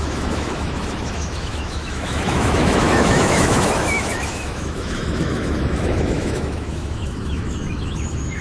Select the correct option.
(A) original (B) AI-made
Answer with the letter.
B